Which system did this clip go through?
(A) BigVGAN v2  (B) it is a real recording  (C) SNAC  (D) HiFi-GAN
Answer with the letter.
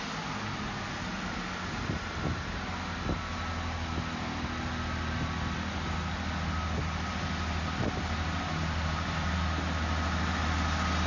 B